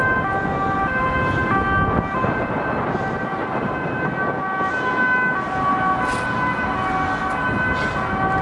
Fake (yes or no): no